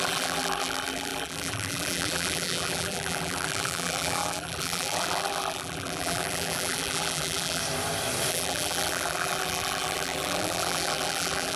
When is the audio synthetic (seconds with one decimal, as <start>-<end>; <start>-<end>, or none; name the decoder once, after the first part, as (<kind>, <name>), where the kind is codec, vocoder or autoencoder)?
0.0-7.6 (vocoder, BigVGAN v2); 8.3-11.6